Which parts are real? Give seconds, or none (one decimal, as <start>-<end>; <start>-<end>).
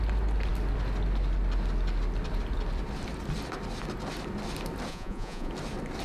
0.0-4.9; 5.5-6.0